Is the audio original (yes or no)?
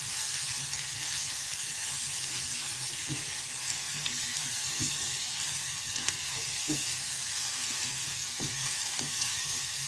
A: no